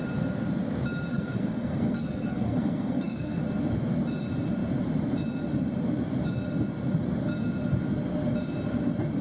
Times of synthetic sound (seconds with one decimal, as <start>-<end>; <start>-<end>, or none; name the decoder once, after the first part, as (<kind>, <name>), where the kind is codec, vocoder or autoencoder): 1.1-3.4 (codec, SNAC)